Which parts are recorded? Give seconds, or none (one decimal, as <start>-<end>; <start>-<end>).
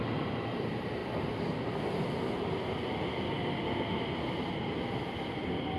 0.0-5.8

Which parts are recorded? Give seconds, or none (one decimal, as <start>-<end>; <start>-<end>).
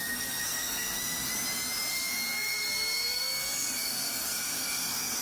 1.3-1.9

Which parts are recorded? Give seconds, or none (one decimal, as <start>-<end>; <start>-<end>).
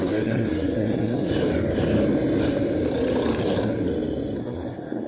1.3-4.4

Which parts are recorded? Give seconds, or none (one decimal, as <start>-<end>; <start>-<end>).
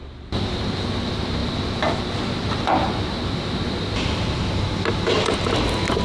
0.0-6.0